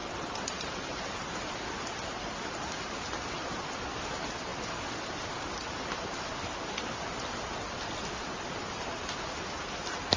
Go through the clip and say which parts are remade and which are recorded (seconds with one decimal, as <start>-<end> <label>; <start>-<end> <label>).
0.0-1.8 remade; 1.8-10.2 recorded